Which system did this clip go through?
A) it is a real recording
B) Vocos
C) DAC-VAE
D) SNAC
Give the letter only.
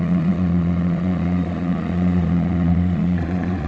B